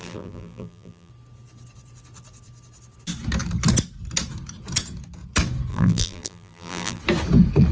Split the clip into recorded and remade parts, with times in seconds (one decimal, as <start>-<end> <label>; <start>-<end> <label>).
0.0-1.1 remade; 1.1-5.7 recorded; 5.7-7.0 remade; 7.0-7.7 recorded